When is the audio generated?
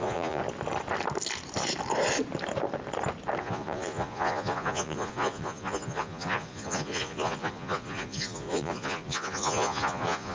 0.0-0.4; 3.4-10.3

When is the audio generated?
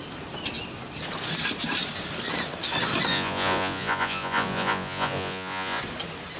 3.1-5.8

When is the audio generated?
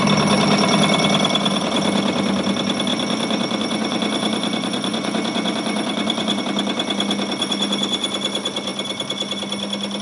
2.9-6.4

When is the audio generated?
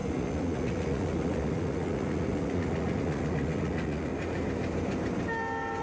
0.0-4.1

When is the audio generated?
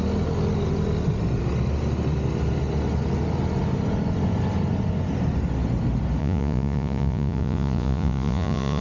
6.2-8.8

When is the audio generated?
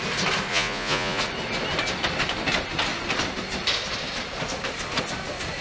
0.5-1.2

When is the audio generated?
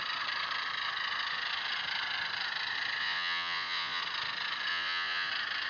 3.0-4.0; 4.7-5.3